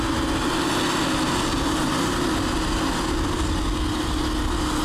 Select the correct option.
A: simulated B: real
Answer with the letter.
B